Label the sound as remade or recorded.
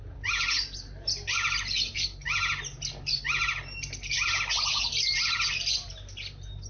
recorded